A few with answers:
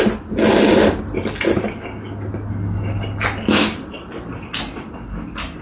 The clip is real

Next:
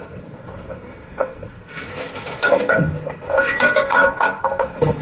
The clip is fake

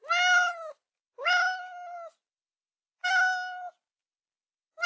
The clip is real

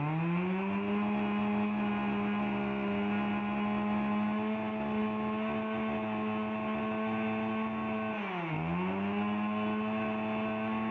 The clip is real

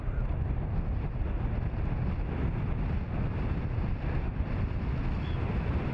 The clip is real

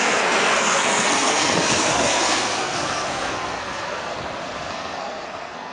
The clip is fake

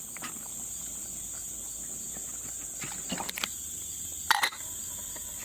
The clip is real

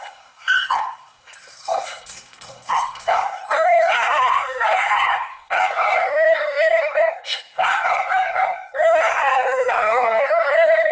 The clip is fake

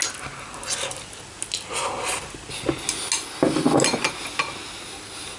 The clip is real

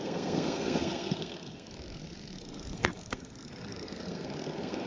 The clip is fake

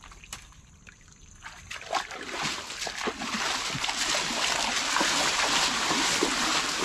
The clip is real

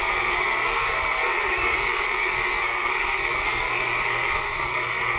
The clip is fake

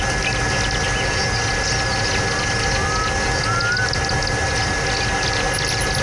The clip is real